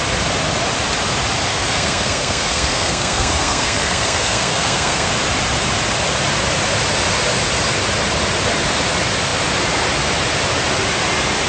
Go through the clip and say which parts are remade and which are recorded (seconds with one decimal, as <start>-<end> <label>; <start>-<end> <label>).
0.0-1.5 recorded; 1.5-5.1 remade; 5.1-11.5 recorded